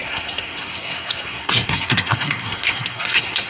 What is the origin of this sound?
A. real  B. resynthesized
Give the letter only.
B